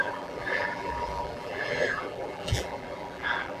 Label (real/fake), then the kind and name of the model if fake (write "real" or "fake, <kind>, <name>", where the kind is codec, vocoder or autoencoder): fake, vocoder, BigVGAN v2